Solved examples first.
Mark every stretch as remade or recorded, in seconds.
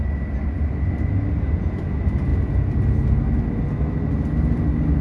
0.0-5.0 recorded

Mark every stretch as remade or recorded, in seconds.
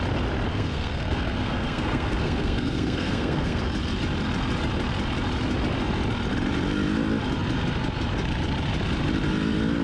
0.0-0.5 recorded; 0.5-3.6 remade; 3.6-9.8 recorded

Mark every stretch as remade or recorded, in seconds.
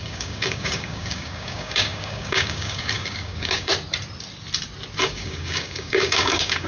0.0-3.7 remade; 3.7-5.0 recorded; 5.0-6.7 remade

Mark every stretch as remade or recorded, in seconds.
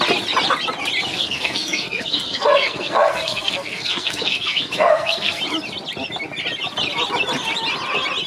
0.0-1.1 recorded; 1.1-5.4 remade; 5.4-8.3 recorded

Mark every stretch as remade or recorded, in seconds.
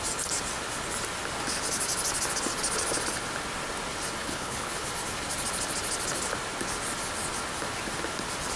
0.0-4.2 recorded; 4.2-4.9 remade; 4.9-8.6 recorded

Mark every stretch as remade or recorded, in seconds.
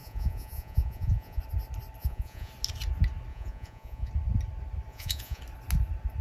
0.0-1.4 remade; 1.4-2.0 recorded; 2.0-2.5 remade; 2.5-3.3 recorded; 3.3-4.1 remade; 4.1-4.9 recorded; 4.9-5.4 remade; 5.4-6.2 recorded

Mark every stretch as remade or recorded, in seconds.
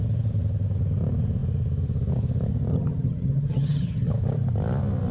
0.0-2.7 recorded; 2.7-4.1 remade; 4.1-5.1 recorded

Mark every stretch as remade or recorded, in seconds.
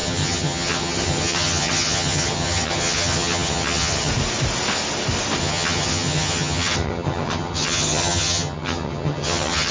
0.0-4.1 remade; 4.1-5.4 recorded; 5.4-9.7 remade